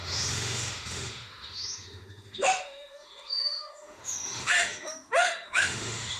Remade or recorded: remade